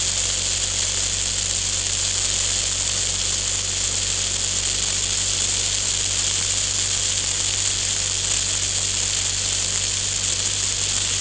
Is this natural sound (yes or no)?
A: yes